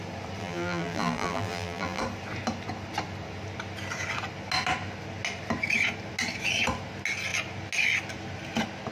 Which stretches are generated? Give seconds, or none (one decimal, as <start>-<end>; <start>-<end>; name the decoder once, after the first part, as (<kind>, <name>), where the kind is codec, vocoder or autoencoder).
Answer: 0.4-2.0 (vocoder, BigVGAN v2)